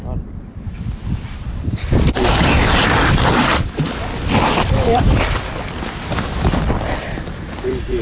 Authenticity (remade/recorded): remade